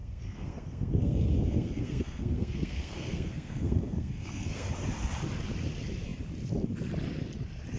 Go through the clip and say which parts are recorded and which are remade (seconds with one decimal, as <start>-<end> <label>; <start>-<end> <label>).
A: 0.0-4.7 remade; 4.7-7.8 recorded